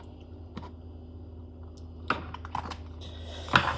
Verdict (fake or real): real